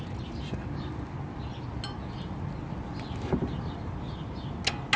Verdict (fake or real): real